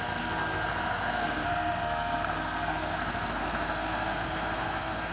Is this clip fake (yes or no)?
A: yes